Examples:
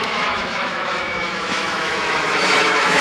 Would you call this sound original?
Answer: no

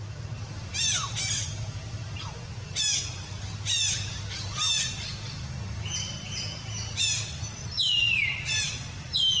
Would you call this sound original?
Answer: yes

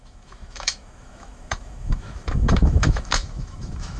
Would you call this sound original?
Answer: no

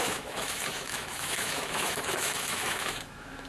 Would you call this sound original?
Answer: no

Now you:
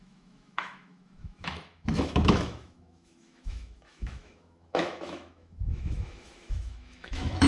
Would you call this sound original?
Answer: no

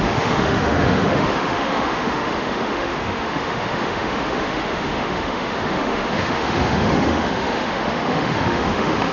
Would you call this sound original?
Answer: no